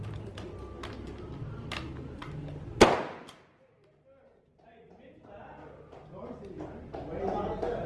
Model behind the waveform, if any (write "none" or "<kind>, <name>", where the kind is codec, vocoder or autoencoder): none